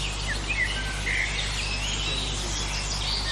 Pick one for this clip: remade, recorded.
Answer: recorded